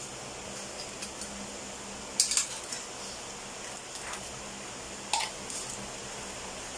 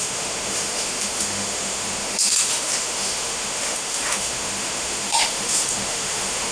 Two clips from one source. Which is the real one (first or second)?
first